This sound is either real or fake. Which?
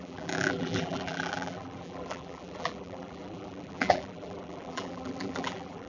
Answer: fake